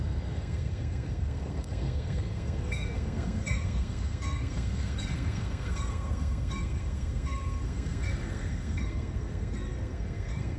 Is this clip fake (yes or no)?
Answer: yes